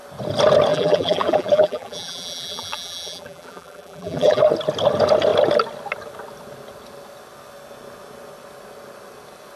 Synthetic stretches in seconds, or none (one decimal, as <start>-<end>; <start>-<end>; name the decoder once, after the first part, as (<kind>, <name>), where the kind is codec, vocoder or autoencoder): 0.7-4.4 (vocoder, BigVGAN v2)